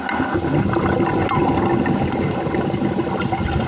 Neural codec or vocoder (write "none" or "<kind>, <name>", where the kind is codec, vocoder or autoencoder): none